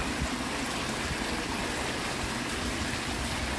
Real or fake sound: real